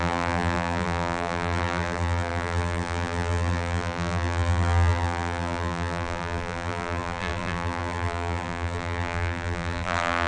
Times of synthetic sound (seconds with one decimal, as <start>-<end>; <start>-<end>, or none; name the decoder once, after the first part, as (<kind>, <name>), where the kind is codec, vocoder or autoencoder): 0.0-10.3 (vocoder, BigVGAN v2)